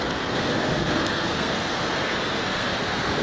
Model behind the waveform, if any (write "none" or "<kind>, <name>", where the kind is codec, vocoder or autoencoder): codec, SNAC